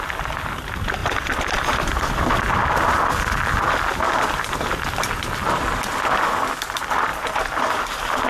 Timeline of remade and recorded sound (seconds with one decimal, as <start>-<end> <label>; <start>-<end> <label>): 0.0-1.0 recorded; 1.0-2.1 remade; 2.1-7.1 recorded; 7.1-7.8 remade; 7.8-8.3 recorded